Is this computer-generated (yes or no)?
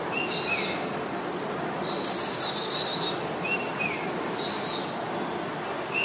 no